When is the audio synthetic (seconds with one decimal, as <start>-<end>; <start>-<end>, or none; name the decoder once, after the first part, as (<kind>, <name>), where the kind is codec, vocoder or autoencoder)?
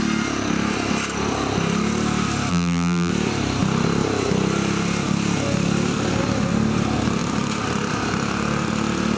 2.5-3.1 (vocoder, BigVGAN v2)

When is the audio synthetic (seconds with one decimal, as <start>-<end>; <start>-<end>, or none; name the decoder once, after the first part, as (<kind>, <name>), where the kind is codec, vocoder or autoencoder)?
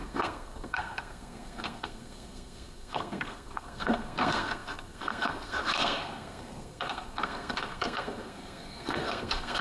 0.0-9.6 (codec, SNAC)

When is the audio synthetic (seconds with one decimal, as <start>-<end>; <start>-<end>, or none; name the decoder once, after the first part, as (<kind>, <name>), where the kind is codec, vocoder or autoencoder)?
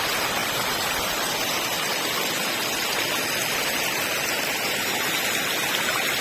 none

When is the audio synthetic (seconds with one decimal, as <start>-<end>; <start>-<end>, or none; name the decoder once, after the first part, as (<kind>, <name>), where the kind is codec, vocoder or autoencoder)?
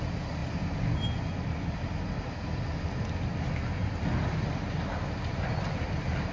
none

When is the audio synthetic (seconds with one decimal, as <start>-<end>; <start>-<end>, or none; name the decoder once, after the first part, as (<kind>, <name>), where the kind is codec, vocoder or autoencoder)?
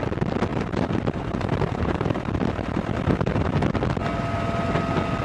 0.5-3.6 (vocoder, BigVGAN v2)